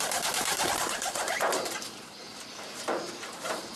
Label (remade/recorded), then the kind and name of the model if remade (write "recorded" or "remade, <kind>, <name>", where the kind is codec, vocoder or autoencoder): remade, vocoder, BigVGAN v2